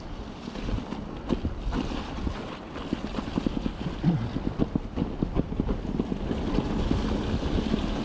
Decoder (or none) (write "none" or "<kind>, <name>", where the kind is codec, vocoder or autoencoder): none